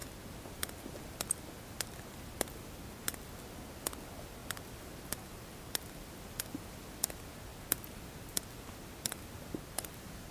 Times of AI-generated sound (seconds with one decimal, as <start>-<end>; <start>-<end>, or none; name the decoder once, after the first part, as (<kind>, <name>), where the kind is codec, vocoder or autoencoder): none